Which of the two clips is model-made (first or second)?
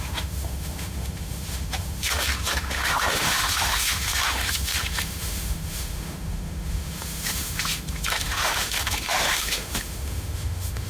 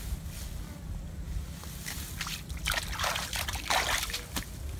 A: first